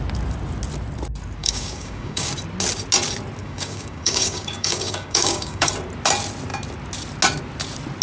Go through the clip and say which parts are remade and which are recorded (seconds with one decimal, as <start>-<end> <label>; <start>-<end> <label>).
0.0-1.4 recorded; 1.4-2.3 remade; 2.3-3.4 recorded; 3.4-5.7 remade; 5.7-8.0 recorded